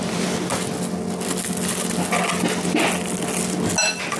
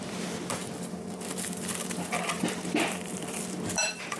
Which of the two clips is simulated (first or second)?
second